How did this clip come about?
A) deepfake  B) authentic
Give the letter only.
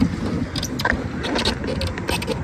B